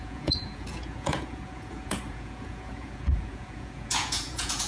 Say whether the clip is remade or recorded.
remade